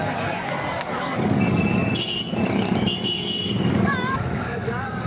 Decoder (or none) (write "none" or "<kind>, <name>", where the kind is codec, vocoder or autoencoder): codec, DAC